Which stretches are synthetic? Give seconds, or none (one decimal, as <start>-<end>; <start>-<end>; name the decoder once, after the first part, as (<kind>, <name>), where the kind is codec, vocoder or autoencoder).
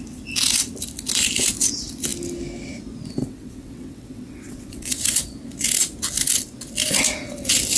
3.2-4.9 (vocoder, WaveNeXt)